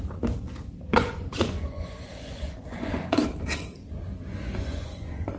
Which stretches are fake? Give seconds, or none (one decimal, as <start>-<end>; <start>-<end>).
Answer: 0.9-3.2; 4.3-5.4